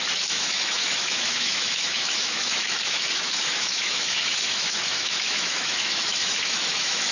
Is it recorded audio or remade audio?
remade